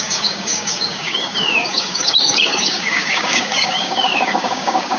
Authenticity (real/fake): fake